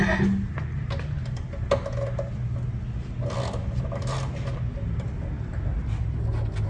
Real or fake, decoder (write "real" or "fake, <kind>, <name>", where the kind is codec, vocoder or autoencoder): real